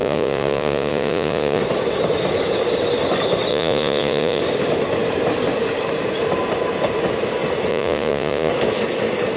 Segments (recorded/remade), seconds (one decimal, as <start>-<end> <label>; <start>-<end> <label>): 0.0-1.6 remade; 1.6-3.5 recorded; 3.5-4.4 remade; 4.4-7.7 recorded; 7.7-8.5 remade; 8.5-9.4 recorded